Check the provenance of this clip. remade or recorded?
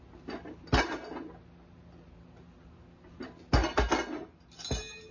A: recorded